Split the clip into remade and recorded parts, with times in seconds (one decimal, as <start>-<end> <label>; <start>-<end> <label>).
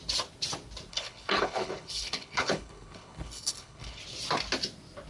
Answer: 0.0-0.9 recorded; 0.9-4.0 remade; 4.0-5.1 recorded